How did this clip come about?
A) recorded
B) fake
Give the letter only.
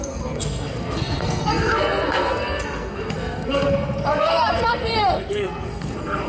B